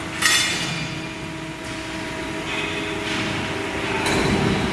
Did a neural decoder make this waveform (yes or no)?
no